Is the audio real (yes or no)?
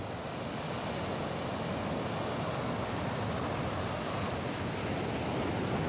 yes